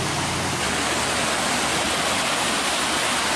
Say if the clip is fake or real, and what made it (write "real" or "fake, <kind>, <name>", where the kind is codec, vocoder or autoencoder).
real